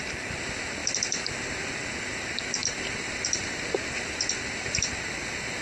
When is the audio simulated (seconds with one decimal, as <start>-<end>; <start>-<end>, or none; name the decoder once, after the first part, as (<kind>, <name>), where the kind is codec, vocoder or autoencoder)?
0.8-1.7 (vocoder, BigVGAN v2); 2.6-4.9